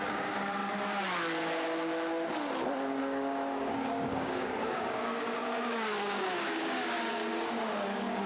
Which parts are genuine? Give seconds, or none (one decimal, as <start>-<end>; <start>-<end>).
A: 0.6-3.0